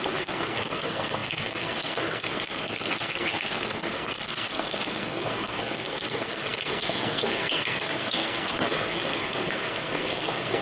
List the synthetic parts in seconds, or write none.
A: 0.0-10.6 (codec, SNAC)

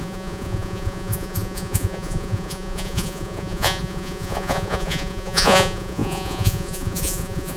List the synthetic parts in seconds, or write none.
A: 0.0-7.6 (vocoder, Vocos)

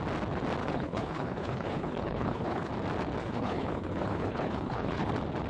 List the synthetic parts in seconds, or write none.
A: 0.6-2.7 (codec, HILCodec); 3.2-5.1

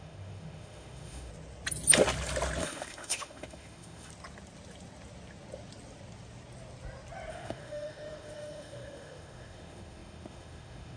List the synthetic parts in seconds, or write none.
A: 0.0-1.3 (autoencoder, DAC-VAE); 2.6-4.1; 7.3-11.0

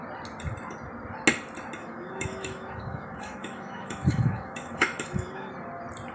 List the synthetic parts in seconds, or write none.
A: 1.8-5.5 (autoencoder, DAC-VAE)